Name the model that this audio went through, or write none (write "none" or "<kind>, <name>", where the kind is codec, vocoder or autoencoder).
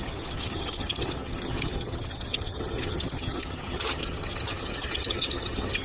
vocoder, HiFi-GAN